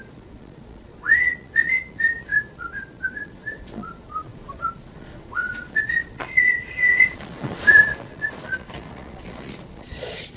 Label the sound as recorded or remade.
remade